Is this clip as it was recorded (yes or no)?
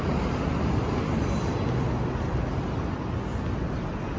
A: yes